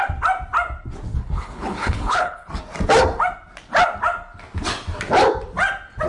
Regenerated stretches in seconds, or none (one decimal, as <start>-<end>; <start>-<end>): 1.1-2.5